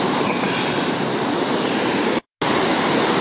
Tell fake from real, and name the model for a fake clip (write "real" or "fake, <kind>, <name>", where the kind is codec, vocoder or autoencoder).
real